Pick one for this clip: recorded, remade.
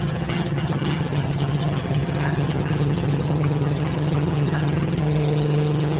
remade